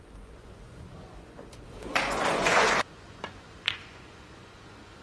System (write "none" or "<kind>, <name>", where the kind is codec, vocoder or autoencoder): vocoder, Vocos